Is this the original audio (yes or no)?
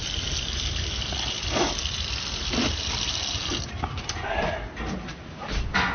yes